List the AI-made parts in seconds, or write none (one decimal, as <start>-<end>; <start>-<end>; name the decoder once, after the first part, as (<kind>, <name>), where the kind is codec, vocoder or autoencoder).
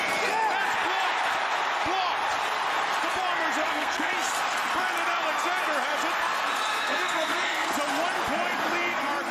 3.6-4.1 (codec, SNAC); 6.7-7.7